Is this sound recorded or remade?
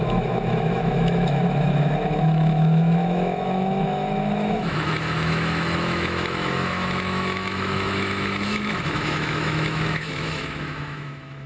remade